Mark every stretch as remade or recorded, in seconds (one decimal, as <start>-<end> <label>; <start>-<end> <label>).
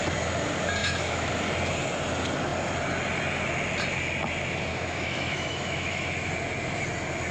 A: 0.0-0.8 recorded; 0.8-1.3 remade; 1.3-4.7 recorded; 4.7-6.3 remade; 6.3-7.3 recorded